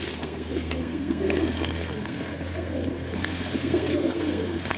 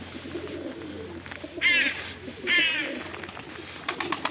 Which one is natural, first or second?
second